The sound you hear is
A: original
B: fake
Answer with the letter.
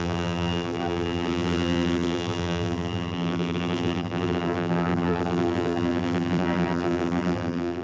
B